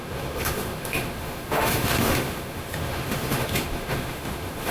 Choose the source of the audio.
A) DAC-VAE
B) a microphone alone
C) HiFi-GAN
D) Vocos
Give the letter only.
A